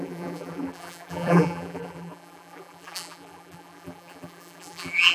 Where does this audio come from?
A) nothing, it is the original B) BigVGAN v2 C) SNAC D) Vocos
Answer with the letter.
B